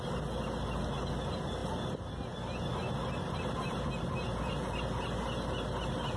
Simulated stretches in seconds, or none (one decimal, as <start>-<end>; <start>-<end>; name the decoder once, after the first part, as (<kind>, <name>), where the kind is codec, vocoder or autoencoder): none